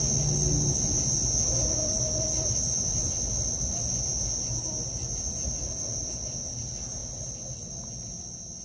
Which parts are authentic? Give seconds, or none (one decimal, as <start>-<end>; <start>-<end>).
0.0-8.6